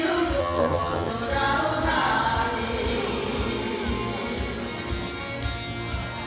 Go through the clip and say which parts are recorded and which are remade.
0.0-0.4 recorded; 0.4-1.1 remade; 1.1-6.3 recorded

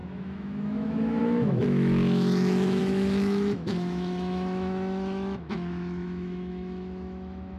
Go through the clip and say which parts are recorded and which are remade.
0.0-7.6 remade

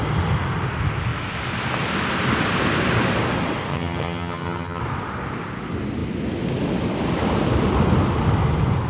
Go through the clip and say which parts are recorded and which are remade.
0.0-3.7 recorded; 3.7-4.8 remade; 4.8-8.9 recorded

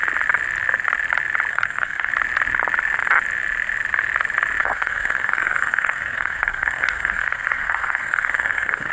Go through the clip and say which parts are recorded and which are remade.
0.0-1.5 recorded; 1.5-2.1 remade; 2.1-4.6 recorded; 4.6-8.9 remade

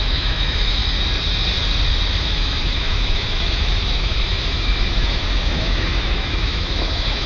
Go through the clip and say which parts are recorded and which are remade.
0.0-0.8 remade; 0.8-2.2 recorded; 2.2-7.3 remade

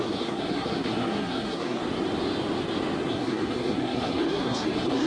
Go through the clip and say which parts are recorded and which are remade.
0.0-1.8 remade; 1.8-3.1 recorded; 3.1-5.1 remade